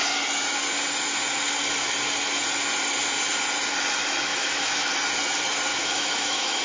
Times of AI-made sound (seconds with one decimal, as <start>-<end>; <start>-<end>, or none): 4.3-4.9; 5.7-6.6